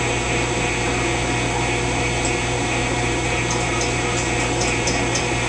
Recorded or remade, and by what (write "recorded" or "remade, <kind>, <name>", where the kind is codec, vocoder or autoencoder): recorded